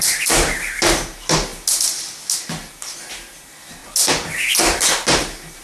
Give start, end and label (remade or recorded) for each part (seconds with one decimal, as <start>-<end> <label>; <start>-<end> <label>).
0.0-1.5 remade; 1.5-3.1 recorded; 3.1-3.8 remade; 3.8-4.8 recorded; 4.8-5.6 remade

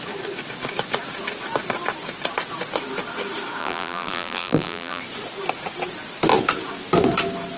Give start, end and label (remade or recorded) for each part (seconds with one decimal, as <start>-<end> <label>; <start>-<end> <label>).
0.0-3.6 recorded; 3.6-5.0 remade; 5.0-7.6 recorded

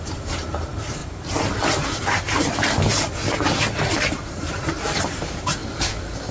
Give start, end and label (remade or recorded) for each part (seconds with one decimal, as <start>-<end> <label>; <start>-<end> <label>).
0.0-1.0 remade; 1.0-4.0 recorded; 4.0-5.6 remade; 5.6-6.3 recorded